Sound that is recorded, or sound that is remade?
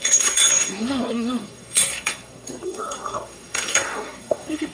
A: remade